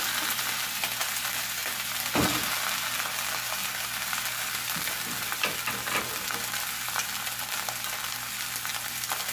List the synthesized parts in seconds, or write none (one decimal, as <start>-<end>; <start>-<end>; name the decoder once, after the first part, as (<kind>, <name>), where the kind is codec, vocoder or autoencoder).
none